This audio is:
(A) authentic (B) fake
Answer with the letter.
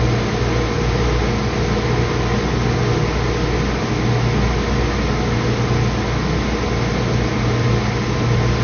A